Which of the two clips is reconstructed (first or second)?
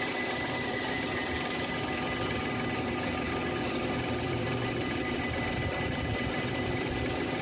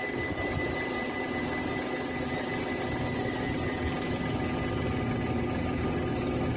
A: first